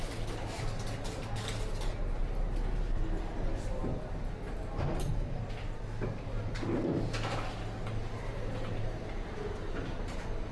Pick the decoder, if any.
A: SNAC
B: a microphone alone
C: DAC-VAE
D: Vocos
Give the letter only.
B